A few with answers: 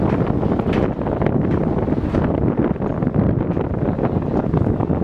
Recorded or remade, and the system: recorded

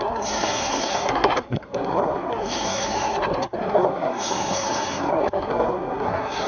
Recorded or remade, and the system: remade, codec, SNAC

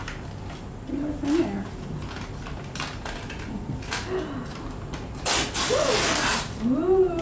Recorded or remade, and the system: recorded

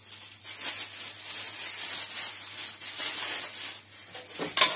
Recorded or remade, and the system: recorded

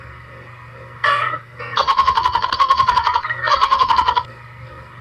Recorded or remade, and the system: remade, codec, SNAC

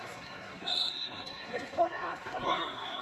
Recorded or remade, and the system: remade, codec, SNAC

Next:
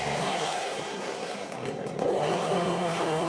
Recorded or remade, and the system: remade, codec, SNAC